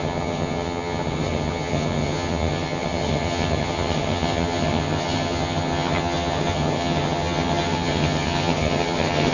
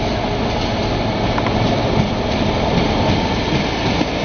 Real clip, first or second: second